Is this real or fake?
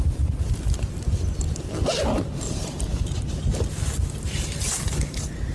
real